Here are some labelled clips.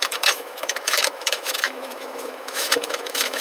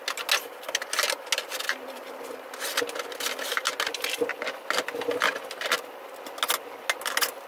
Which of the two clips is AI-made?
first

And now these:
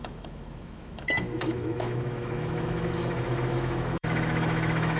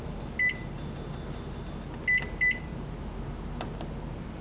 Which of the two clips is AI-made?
first